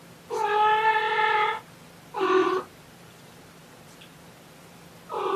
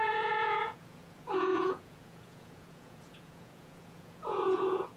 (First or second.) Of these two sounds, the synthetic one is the second